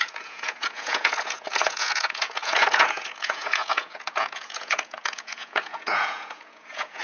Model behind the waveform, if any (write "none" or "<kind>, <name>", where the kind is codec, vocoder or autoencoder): vocoder, Vocos